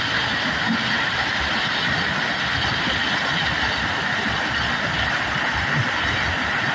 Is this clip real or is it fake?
real